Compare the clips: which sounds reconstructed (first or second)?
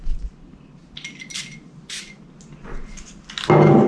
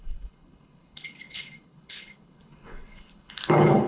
second